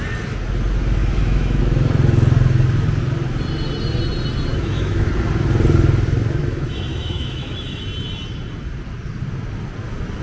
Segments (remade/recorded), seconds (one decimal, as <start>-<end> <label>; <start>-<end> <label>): 0.0-1.0 recorded; 1.0-1.6 remade; 1.6-4.5 recorded; 4.5-5.1 remade; 5.1-6.4 recorded; 6.4-7.8 remade; 7.8-10.2 recorded